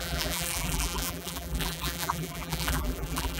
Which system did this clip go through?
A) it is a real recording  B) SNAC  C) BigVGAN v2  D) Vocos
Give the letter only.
C